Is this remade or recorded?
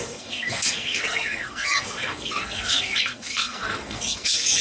remade